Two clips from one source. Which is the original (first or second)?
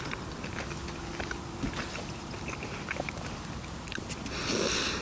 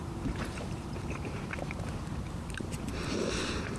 first